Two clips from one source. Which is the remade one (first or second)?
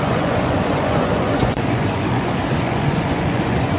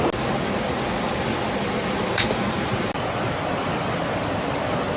first